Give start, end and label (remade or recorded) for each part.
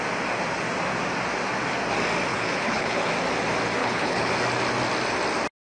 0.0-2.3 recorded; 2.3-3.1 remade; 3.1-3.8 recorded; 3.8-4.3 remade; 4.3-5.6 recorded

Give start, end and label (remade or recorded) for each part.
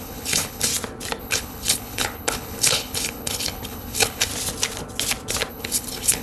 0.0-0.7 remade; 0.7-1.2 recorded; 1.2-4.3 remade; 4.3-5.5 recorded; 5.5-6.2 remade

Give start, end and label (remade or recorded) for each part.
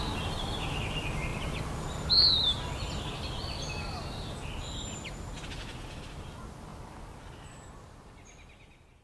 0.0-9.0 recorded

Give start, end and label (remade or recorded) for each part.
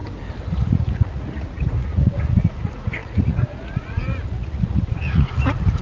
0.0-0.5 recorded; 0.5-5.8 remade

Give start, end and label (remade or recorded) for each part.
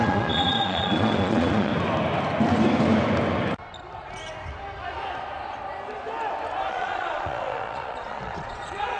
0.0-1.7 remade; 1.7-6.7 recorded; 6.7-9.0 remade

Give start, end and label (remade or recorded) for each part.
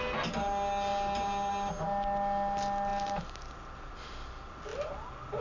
0.0-5.4 recorded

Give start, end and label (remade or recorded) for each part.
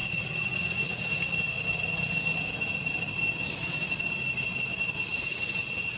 0.0-1.0 remade; 1.0-6.0 recorded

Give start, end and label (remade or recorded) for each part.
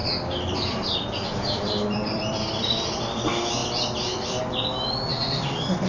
0.0-2.6 remade; 2.6-3.6 recorded; 3.6-4.4 remade; 4.4-5.9 recorded